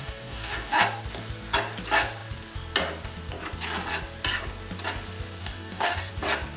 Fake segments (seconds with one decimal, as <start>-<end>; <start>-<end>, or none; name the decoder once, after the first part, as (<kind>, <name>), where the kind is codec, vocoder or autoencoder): 0.0-0.8 (codec, DAC); 5.4-6.1